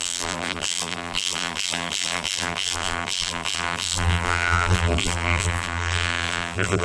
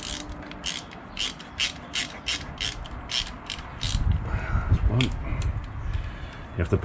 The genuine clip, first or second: second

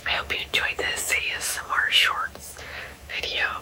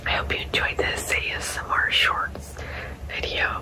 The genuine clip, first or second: second